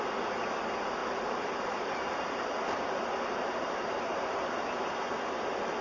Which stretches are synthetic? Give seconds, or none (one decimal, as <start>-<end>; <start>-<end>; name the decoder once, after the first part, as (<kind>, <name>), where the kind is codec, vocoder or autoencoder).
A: 1.0-4.5 (vocoder, BigVGAN v2)